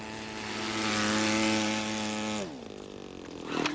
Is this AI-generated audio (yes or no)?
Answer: no